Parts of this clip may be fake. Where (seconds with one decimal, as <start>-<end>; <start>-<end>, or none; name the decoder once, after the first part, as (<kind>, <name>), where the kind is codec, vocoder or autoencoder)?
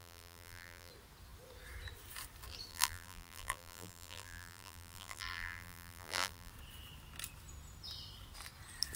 0.0-0.9 (vocoder, BigVGAN v2); 2.7-6.5